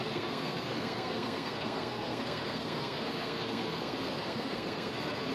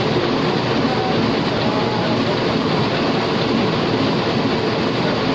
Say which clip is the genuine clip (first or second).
second